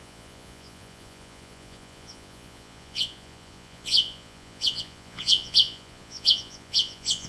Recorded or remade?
remade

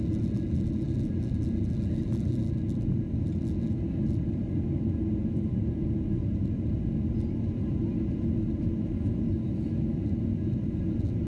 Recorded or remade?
recorded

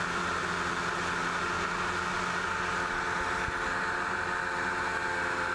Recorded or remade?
recorded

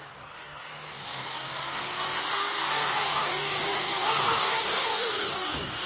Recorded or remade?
remade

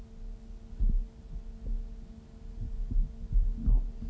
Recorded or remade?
recorded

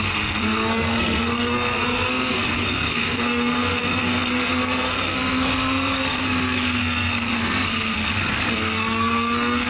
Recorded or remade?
remade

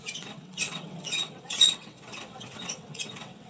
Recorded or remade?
remade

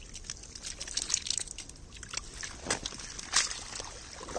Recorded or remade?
recorded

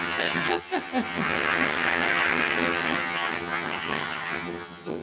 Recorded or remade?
remade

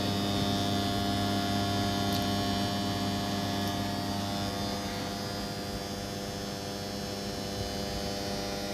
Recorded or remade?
recorded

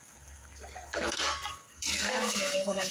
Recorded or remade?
remade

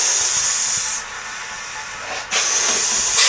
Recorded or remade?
recorded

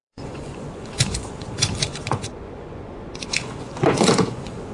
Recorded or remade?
remade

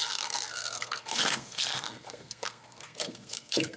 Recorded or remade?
remade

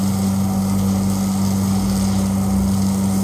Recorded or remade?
recorded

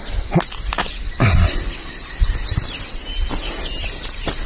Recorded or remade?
recorded